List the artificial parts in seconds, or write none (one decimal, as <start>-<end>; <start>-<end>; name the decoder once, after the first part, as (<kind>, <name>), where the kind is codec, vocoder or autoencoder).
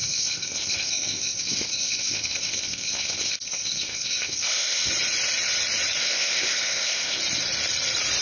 0.0-4.9 (codec, ZipCodec); 6.0-7.2